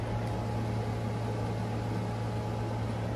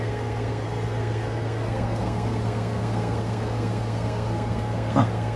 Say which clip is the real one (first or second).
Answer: first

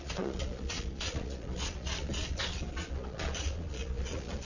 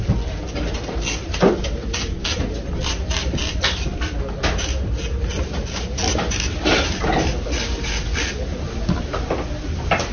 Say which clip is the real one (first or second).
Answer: second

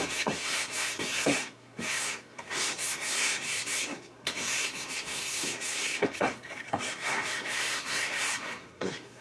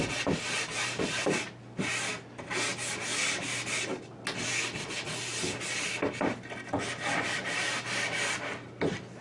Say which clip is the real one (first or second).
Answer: second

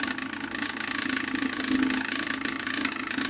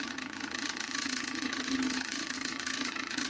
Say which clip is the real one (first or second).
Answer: first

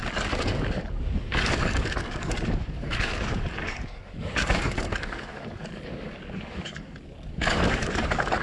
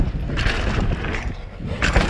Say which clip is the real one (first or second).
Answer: second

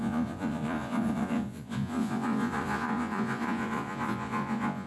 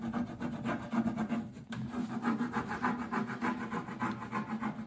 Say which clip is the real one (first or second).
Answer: second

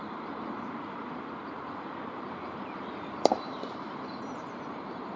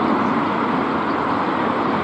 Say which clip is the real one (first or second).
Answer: second